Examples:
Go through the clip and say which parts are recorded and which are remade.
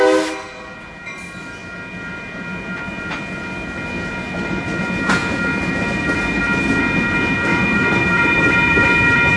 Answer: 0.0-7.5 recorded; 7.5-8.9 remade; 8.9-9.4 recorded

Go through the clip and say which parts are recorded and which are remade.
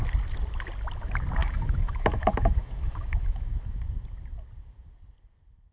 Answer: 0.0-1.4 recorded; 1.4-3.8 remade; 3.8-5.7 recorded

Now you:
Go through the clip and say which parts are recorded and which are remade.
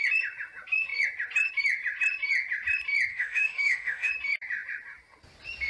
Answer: 0.0-3.1 recorded; 3.1-4.1 remade; 4.1-5.7 recorded